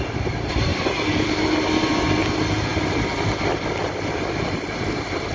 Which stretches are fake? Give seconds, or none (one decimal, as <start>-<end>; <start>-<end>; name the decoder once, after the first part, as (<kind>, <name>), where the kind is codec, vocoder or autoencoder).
0.0-0.7 (vocoder, BigVGAN v2); 1.8-5.3

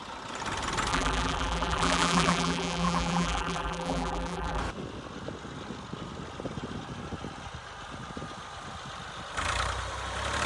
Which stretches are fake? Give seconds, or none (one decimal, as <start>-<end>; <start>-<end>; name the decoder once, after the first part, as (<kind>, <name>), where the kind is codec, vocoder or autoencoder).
0.9-4.6 (vocoder, BigVGAN v2)